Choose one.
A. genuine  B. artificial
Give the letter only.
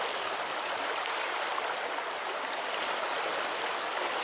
A